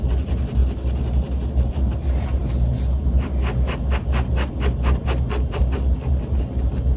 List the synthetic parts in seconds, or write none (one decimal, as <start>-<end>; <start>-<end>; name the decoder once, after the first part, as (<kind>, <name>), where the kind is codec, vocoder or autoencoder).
0.0-0.6 (vocoder, BigVGAN v2); 1.7-2.4; 5.6-7.0